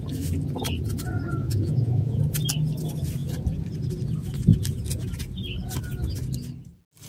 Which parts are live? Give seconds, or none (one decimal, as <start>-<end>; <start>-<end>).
0.0-1.4; 2.2-7.1